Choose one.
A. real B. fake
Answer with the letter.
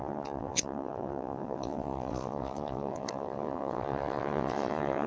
B